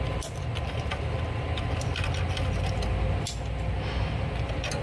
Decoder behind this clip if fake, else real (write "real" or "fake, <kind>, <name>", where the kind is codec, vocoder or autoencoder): real